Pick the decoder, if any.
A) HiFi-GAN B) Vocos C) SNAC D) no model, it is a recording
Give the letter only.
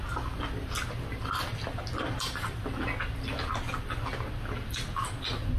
D